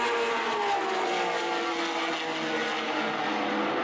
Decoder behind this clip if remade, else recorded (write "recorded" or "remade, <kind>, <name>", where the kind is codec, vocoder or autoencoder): recorded